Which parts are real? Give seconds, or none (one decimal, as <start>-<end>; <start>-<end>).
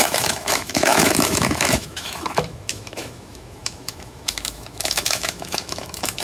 none